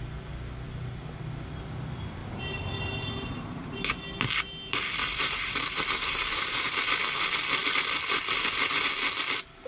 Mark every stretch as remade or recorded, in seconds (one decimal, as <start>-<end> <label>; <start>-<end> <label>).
0.0-2.2 recorded; 2.2-3.8 remade; 3.8-5.0 recorded; 5.0-7.0 remade; 7.0-9.7 recorded